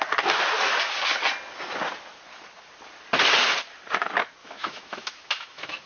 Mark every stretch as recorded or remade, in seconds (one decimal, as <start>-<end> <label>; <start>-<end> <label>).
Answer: 0.0-4.4 recorded; 4.4-5.9 remade